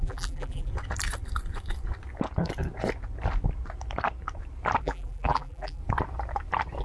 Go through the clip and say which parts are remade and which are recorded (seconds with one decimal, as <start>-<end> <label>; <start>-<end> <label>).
0.0-0.7 remade; 0.7-4.8 recorded; 4.8-5.8 remade; 5.8-6.8 recorded